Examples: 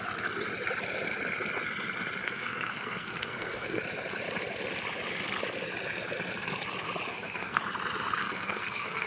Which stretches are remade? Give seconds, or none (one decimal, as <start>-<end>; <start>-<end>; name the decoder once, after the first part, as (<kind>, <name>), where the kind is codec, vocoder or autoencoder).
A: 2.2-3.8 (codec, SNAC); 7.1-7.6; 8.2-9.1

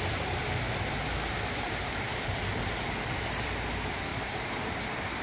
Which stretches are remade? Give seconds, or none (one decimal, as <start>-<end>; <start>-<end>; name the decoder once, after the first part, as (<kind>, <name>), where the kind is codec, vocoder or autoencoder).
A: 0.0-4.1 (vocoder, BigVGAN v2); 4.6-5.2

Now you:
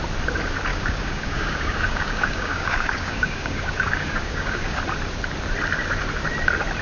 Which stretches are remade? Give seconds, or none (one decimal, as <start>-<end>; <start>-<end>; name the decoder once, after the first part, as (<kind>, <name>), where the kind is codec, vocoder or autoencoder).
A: 0.7-4.8 (codec, DAC)

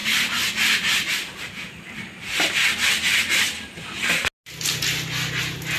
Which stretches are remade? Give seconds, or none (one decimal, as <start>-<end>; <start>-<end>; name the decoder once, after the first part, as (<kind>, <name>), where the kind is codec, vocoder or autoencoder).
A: none

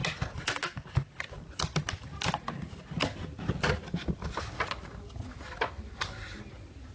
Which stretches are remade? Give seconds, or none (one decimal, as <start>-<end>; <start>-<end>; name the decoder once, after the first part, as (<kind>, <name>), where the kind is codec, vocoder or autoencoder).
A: none

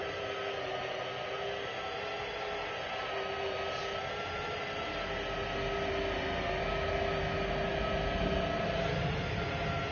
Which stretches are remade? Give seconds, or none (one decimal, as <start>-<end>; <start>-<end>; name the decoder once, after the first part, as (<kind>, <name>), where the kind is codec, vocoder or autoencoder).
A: none